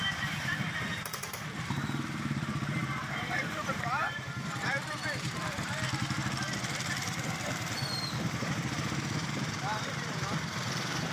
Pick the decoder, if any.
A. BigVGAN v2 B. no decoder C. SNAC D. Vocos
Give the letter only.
A